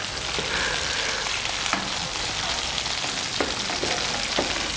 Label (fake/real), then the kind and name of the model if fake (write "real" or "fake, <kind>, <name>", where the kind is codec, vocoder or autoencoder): real